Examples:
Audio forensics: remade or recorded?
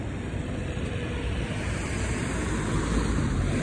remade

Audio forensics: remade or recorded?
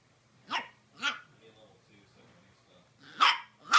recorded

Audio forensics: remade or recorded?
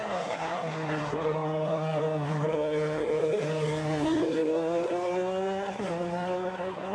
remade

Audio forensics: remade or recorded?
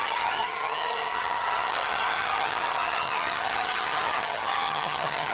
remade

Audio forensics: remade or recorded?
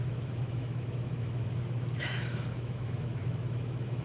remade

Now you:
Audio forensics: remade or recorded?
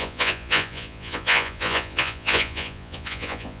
remade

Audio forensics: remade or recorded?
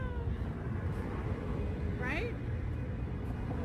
recorded